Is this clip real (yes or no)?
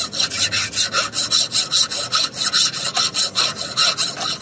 yes